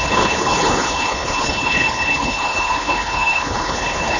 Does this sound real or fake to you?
fake